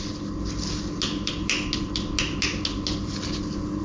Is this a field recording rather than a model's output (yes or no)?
yes